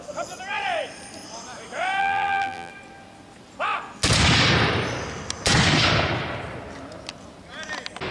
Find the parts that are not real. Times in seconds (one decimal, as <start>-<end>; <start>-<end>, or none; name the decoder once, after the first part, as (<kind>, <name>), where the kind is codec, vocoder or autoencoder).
2.0-2.7 (vocoder, BigVGAN v2)